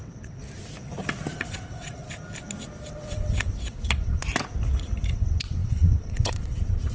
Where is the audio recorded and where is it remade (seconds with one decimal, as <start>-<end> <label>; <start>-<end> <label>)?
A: 0.0-0.4 remade; 0.4-1.4 recorded; 1.4-2.0 remade; 2.0-2.9 recorded; 2.9-4.2 remade; 4.2-5.1 recorded; 5.1-6.9 remade

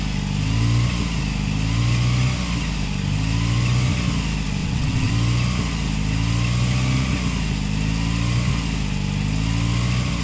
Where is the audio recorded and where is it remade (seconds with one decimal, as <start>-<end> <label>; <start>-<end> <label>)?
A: 0.0-4.6 recorded; 4.6-5.1 remade; 5.1-10.2 recorded

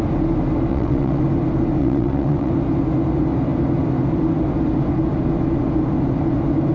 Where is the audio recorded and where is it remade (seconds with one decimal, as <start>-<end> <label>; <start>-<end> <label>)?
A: 0.0-0.7 recorded; 0.7-1.2 remade; 1.2-1.8 recorded; 1.8-2.5 remade; 2.5-6.7 recorded

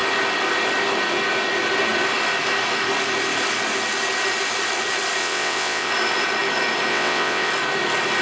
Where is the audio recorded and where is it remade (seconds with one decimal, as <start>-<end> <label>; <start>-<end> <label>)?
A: 0.0-5.2 recorded; 5.2-5.9 remade; 5.9-6.9 recorded; 6.9-7.5 remade; 7.5-8.2 recorded